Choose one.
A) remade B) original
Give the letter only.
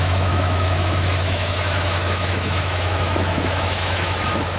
A